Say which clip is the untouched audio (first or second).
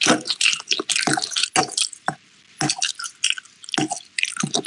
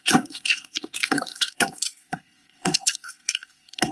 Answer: first